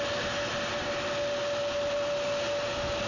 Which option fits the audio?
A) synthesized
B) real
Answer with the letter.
B